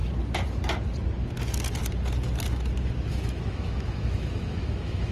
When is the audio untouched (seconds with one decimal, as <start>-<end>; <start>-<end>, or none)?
0.0-3.1

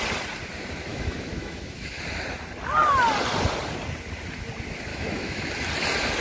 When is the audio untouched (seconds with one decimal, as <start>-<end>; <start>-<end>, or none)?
0.0-0.9; 2.0-4.9; 5.5-6.2